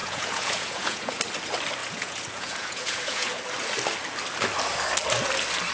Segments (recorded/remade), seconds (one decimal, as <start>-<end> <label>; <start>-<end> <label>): 0.0-1.2 remade; 1.2-1.8 recorded; 1.8-3.4 remade; 3.4-5.7 recorded